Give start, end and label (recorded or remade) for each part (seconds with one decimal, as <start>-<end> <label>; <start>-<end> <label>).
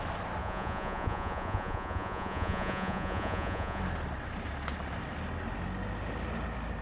0.0-0.4 recorded; 0.4-3.8 remade; 3.8-6.8 recorded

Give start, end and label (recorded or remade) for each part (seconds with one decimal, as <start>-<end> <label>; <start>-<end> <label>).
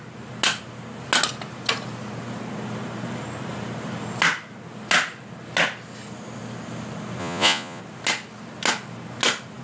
0.0-7.2 recorded; 7.2-7.8 remade; 7.8-9.6 recorded